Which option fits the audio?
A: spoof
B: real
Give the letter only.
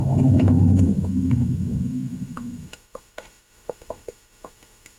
A